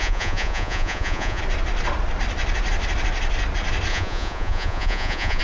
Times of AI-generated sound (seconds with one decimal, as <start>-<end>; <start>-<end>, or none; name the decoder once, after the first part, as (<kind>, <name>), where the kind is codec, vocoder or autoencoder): 0.0-1.4 (vocoder, Vocos); 3.9-5.4